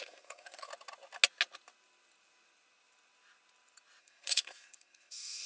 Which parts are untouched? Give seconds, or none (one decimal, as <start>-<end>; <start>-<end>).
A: 0.7-4.0